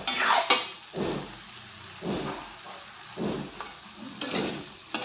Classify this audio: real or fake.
real